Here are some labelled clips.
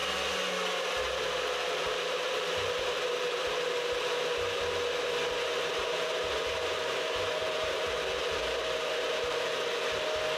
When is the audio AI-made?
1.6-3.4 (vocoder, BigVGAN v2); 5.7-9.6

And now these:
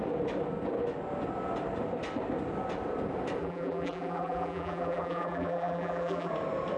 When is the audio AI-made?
3.4-6.3 (vocoder, BigVGAN v2)

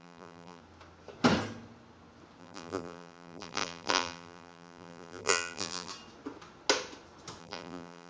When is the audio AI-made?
0.0-0.6 (vocoder, BigVGAN v2); 2.4-5.9; 7.4-8.1

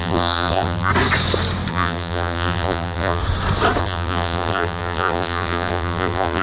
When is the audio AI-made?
0.0-0.9 (vocoder, BigVGAN v2); 1.7-3.2; 3.8-6.4